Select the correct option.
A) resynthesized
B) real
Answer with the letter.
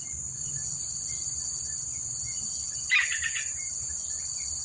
A